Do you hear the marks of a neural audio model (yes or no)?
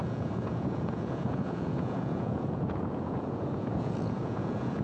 yes